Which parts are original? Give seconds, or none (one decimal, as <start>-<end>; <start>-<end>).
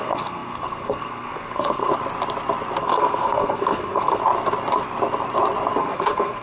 1.9-2.8; 4.2-5.8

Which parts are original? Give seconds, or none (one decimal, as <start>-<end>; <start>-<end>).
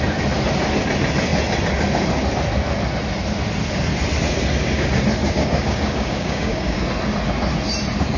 0.0-5.2; 6.8-8.2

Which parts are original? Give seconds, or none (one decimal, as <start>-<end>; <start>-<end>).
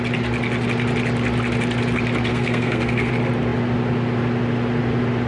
0.0-2.3; 3.1-5.3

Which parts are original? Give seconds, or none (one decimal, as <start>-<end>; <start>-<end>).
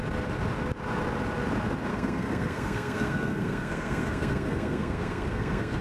0.0-1.9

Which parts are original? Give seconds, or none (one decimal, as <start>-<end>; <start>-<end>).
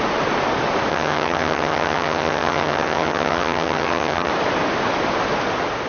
0.0-0.9; 4.3-5.9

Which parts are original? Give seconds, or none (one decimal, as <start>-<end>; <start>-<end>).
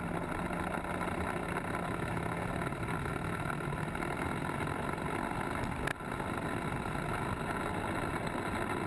0.0-8.9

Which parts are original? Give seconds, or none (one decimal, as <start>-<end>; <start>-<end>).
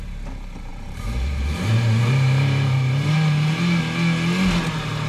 0.0-0.7; 3.8-5.1